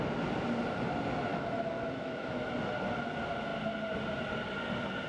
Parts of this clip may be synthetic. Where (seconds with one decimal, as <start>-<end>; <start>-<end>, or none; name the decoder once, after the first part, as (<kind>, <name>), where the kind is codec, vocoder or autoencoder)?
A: 1.3-2.5 (autoencoder, DAC-VAE)